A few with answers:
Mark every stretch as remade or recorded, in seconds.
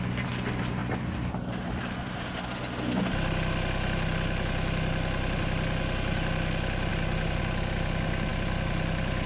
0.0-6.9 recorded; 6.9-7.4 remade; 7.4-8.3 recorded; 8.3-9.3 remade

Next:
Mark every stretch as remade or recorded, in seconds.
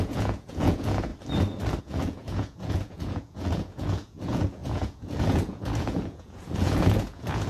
0.0-1.1 remade; 1.1-1.8 recorded; 1.8-7.5 remade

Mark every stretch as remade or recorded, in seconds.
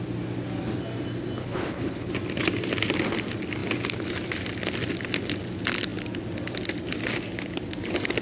0.0-1.4 recorded; 1.4-2.1 remade; 2.1-8.2 recorded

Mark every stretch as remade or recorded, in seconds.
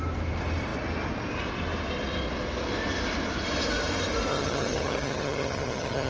0.0-4.3 recorded; 4.3-6.1 remade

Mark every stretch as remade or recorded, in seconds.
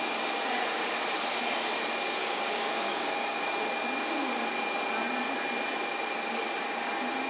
0.0-2.2 recorded; 2.2-3.5 remade; 3.5-7.3 recorded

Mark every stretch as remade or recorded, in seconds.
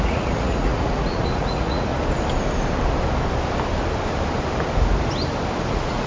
0.0-1.9 remade; 1.9-5.6 recorded; 5.6-6.1 remade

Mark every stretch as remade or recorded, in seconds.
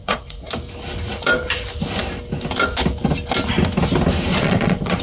0.0-0.5 remade; 0.5-4.3 recorded; 4.3-5.0 remade